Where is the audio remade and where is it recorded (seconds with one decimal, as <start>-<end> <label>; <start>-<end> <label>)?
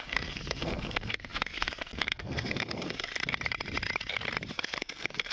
0.0-3.1 remade; 3.1-4.5 recorded; 4.5-5.3 remade